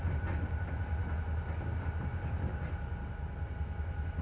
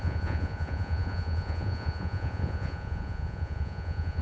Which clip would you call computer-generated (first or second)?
second